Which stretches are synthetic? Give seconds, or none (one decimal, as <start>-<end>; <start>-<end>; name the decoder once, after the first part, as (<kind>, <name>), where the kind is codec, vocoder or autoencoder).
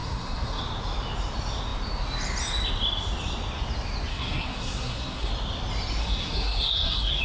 0.0-0.6 (codec, SNAC); 4.1-5.3; 6.0-7.2